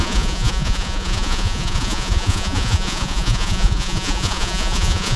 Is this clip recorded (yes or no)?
no